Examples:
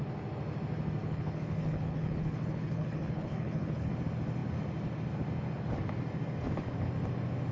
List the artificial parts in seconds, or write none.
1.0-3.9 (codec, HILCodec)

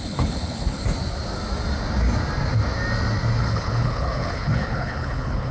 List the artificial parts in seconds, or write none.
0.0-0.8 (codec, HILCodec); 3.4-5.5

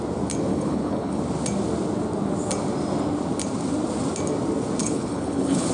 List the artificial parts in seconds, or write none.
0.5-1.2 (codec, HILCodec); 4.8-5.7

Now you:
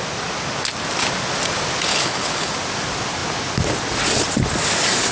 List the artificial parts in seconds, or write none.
1.9-2.5 (codec, HILCodec)

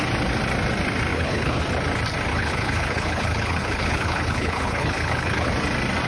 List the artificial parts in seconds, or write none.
1.1-1.6 (codec, HILCodec); 2.3-5.5

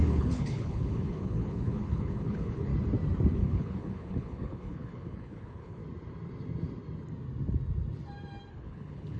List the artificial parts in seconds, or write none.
0.0-2.7 (codec, HILCodec); 3.3-5.8; 8.5-9.2

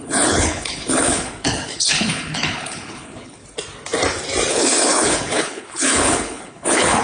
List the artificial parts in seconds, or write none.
0.0-3.4 (codec, HILCodec); 4.5-7.0

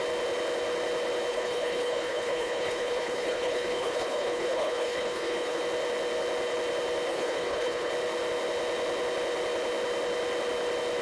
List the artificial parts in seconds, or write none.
1.3-5.6 (codec, HILCodec); 7.1-7.9